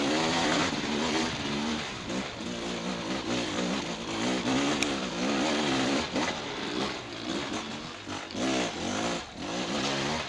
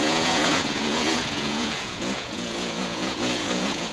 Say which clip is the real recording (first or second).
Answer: first